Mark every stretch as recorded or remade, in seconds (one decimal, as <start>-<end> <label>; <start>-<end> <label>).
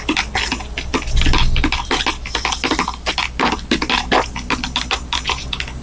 0.0-5.8 recorded